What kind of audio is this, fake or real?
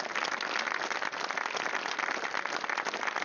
real